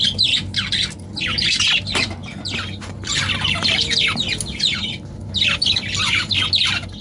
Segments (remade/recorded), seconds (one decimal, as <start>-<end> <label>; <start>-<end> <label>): 0.0-7.0 recorded